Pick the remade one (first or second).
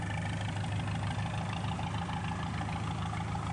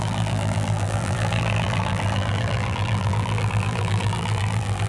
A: second